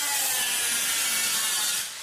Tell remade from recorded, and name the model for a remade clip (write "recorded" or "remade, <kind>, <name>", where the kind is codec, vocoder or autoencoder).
recorded